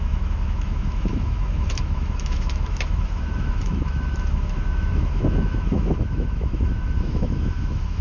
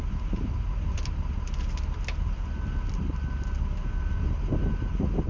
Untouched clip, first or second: second